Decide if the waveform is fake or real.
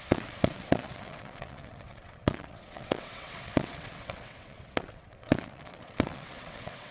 fake